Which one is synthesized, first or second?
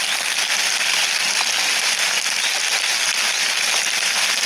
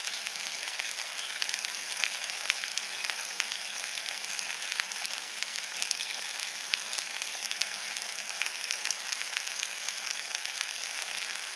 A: second